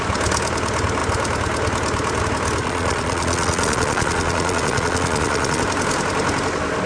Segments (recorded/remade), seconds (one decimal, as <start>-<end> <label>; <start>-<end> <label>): 0.0-2.6 recorded; 2.6-5.6 remade; 5.6-6.9 recorded